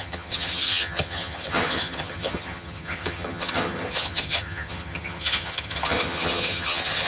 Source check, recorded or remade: remade